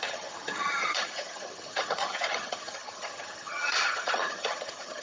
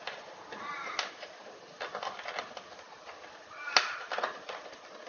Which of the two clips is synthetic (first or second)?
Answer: first